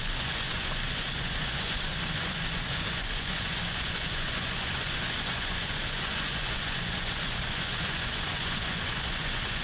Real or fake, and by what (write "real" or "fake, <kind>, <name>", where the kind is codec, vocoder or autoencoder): fake, vocoder, Vocos